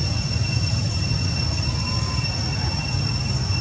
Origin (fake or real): real